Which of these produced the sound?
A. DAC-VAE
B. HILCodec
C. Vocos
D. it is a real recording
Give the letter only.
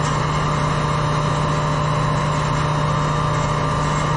D